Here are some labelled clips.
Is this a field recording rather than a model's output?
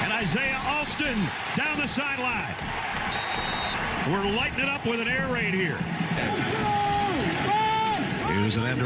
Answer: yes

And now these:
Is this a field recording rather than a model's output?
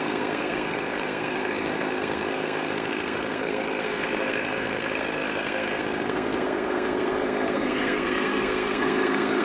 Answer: no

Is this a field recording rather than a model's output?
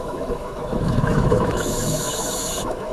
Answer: no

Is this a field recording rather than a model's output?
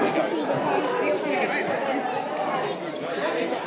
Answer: yes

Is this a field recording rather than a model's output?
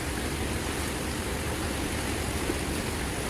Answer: yes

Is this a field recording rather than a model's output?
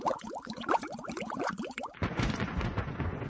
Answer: no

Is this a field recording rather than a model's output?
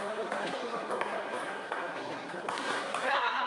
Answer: no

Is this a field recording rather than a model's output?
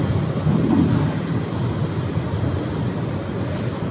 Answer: yes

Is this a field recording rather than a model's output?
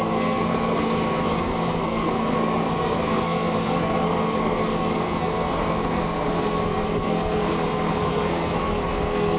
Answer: no